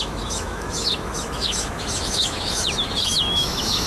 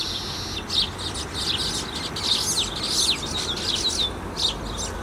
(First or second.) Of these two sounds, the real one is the second